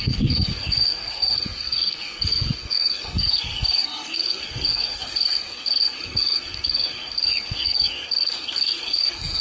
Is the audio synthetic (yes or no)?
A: yes